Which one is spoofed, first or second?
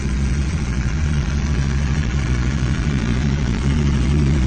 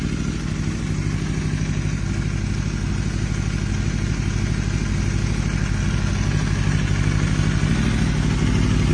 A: first